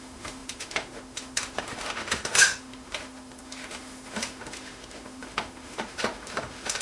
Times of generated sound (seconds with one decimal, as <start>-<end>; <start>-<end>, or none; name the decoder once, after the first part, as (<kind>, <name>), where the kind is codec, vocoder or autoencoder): 0.0-6.8 (autoencoder, DAC-VAE)